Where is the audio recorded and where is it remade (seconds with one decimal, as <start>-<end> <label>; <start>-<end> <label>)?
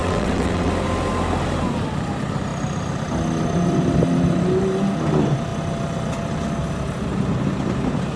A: 0.0-0.7 remade; 0.7-8.2 recorded